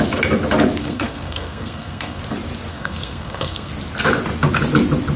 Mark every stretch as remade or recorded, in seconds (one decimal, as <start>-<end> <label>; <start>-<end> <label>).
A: 0.0-0.8 recorded; 0.8-2.2 remade; 2.2-2.7 recorded; 2.7-3.7 remade; 3.7-5.2 recorded